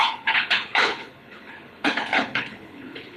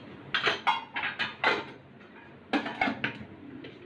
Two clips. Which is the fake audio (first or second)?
first